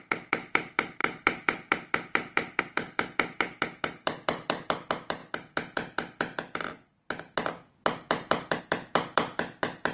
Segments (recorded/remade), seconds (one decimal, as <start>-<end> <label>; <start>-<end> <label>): 0.0-5.2 remade; 5.2-8.6 recorded; 8.6-9.9 remade